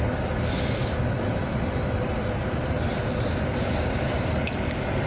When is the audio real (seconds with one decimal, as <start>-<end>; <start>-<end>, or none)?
0.0-5.1

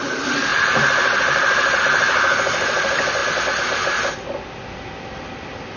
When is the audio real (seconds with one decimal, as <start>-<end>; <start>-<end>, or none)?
0.0-5.8

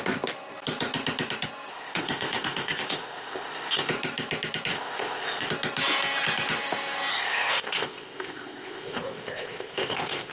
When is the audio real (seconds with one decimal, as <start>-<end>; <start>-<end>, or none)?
0.0-1.7; 3.9-4.7; 5.5-7.1

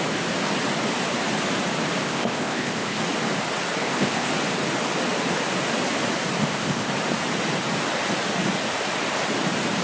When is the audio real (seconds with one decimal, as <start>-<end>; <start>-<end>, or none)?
0.0-2.0; 3.0-3.8; 4.3-6.4; 6.9-9.8

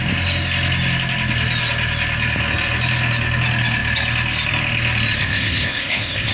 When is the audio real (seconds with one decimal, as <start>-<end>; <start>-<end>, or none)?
0.0-5.2

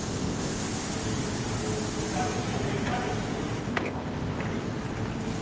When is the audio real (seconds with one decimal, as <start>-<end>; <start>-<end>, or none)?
0.9-3.7; 4.4-5.4

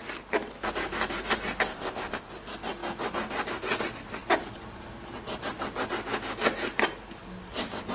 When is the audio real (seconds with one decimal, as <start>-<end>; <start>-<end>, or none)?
0.0-1.7; 2.3-7.9

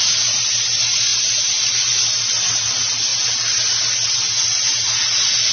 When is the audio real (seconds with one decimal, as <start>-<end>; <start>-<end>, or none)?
0.0-5.5